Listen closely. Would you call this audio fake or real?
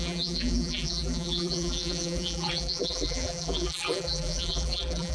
fake